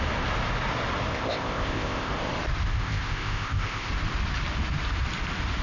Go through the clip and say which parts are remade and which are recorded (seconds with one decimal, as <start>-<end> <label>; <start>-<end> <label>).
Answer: 0.0-1.1 recorded; 1.1-2.1 remade; 2.1-2.7 recorded; 2.7-3.9 remade; 3.9-5.6 recorded